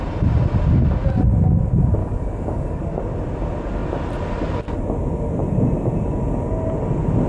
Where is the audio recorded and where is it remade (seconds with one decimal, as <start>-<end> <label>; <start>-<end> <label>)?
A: 0.0-2.0 recorded; 2.0-3.0 remade; 3.0-7.3 recorded

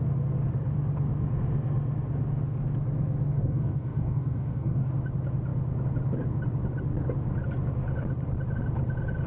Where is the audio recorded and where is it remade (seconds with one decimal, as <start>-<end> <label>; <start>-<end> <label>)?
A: 0.0-3.3 recorded; 3.3-4.9 remade; 4.9-9.3 recorded